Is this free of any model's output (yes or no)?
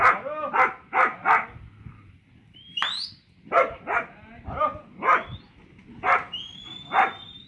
yes